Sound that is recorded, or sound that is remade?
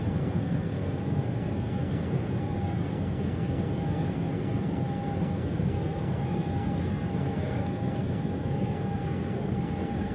remade